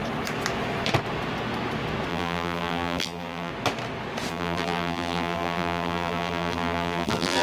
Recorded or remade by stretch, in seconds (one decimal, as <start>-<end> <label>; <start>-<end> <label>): 0.0-2.1 recorded; 2.1-3.5 remade; 3.5-4.3 recorded; 4.3-7.4 remade